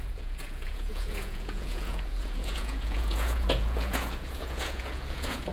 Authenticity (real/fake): fake